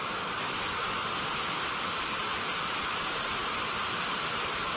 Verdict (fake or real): real